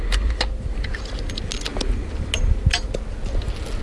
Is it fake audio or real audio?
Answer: real